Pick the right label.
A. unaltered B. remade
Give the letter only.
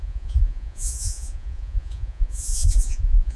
B